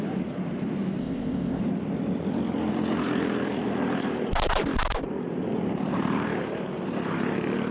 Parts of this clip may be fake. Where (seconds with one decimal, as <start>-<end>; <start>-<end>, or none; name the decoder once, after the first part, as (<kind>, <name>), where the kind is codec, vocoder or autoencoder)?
1.0-1.6 (codec, ZipCodec)